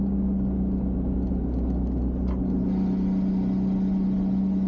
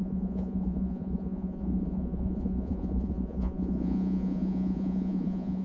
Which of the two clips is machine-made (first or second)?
second